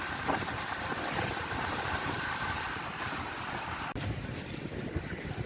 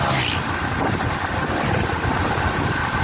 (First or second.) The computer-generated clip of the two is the first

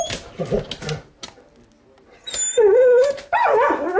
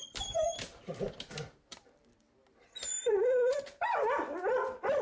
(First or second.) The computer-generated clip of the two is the second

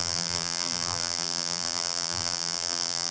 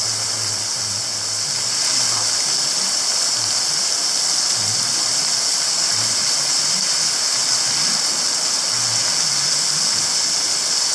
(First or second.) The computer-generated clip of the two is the first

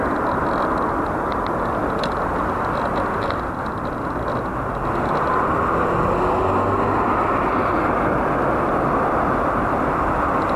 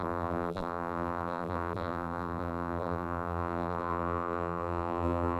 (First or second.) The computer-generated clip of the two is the second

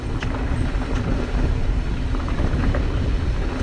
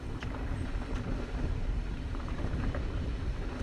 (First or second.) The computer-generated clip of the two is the second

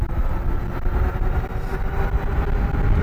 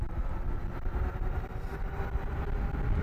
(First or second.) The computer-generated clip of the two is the second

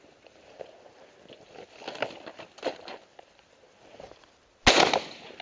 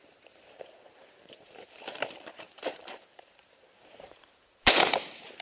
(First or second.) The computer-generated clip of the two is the second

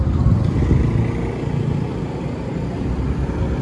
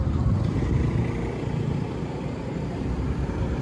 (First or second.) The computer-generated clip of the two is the second